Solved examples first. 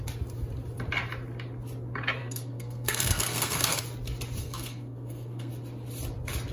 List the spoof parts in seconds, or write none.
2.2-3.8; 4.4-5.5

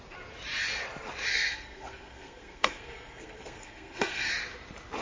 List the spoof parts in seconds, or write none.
1.3-4.3

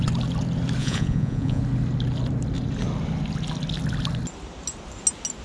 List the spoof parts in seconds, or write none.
0.8-1.6

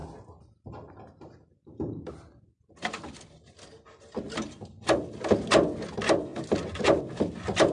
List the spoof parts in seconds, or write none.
none

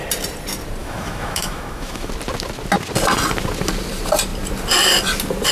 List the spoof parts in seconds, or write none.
0.8-2.1

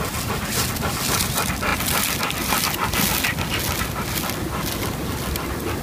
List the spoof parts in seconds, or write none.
none